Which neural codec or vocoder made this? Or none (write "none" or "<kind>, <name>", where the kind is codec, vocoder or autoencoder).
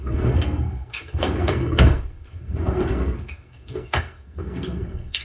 codec, SNAC